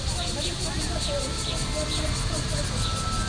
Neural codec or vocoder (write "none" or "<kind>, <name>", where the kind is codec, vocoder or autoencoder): none